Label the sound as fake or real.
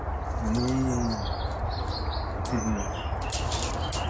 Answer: real